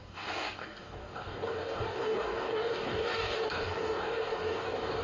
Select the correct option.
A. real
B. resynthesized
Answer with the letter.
B